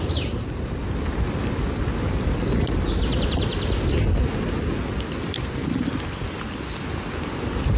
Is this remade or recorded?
recorded